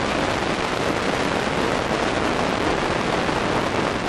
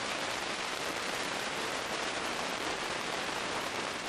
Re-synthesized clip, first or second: second